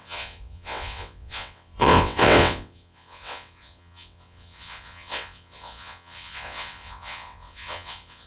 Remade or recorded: remade